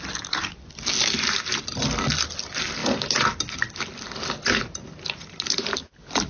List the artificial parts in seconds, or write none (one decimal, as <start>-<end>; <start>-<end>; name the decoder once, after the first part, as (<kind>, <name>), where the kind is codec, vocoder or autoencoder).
none